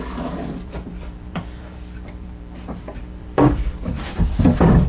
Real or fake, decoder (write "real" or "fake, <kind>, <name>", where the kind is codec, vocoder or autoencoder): fake, vocoder, BigVGAN v2